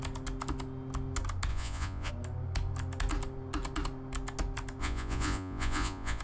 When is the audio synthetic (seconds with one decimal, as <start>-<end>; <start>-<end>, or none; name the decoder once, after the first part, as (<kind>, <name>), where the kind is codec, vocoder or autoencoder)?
1.5-2.1 (vocoder, Vocos); 4.8-6.2